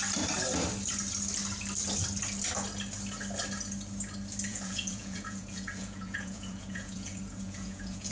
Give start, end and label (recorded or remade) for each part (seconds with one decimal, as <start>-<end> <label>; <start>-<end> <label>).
0.0-4.5 recorded; 4.5-8.1 remade